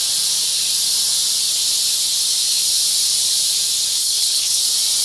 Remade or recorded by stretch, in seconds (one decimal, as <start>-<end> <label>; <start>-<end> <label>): 0.0-4.0 recorded; 4.0-4.6 remade; 4.6-5.0 recorded